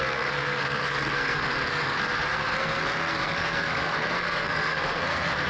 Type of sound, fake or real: fake